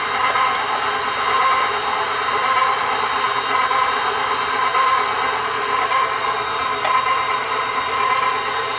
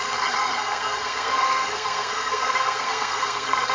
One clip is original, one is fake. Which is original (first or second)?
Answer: first